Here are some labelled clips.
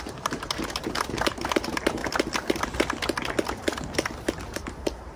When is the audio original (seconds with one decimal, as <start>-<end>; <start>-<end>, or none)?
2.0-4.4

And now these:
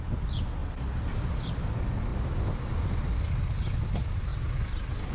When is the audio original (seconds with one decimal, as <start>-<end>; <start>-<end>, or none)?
0.0-0.6; 1.5-4.3

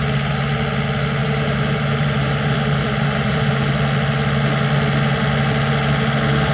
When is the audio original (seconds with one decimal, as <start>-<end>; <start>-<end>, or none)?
0.0-1.2; 3.7-6.5